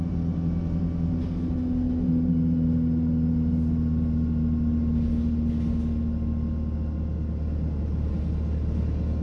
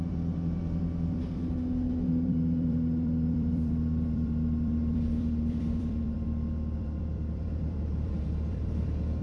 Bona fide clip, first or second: first